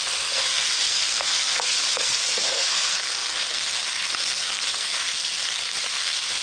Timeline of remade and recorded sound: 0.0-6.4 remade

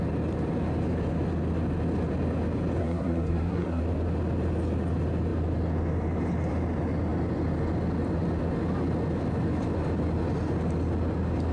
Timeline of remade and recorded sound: 0.0-2.8 recorded; 2.8-3.8 remade; 3.8-11.5 recorded

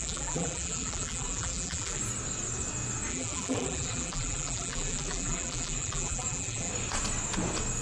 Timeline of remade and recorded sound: 0.0-2.0 remade; 2.0-3.1 recorded; 3.1-6.7 remade; 6.7-7.8 recorded